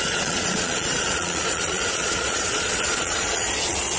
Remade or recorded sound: remade